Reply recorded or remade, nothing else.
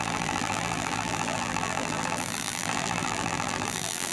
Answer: remade